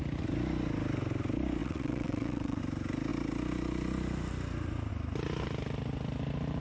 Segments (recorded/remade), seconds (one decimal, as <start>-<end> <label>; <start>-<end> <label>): 0.0-1.6 recorded; 1.6-2.6 remade; 2.6-6.6 recorded